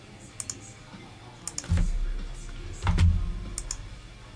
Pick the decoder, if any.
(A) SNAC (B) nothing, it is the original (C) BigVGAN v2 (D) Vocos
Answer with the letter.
B